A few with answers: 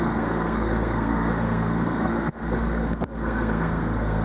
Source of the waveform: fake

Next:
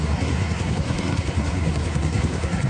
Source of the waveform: fake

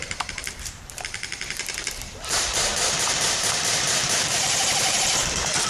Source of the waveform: fake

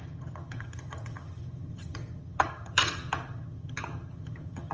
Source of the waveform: fake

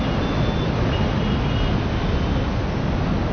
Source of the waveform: real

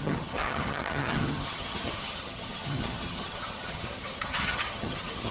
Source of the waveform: fake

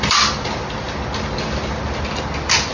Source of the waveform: real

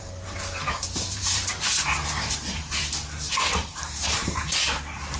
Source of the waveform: fake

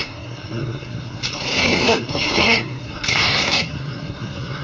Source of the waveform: fake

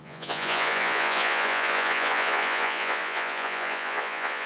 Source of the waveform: fake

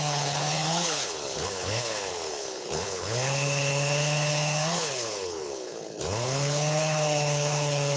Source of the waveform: fake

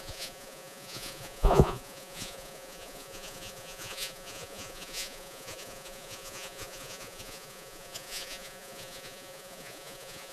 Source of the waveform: fake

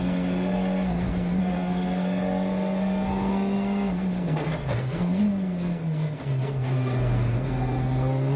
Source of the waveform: fake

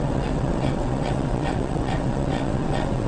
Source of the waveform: fake